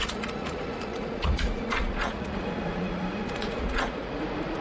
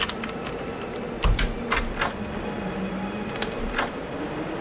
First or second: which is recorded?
second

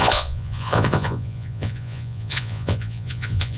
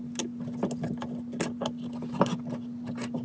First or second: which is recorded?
second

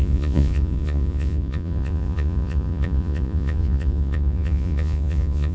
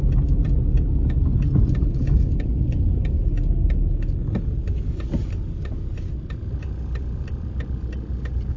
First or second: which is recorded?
second